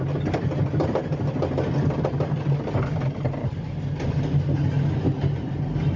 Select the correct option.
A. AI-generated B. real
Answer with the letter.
B